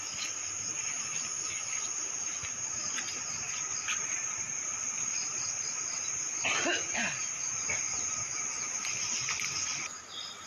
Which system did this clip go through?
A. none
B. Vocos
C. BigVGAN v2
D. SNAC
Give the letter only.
A